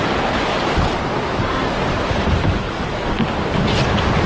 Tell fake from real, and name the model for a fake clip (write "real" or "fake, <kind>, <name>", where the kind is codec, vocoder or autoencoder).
real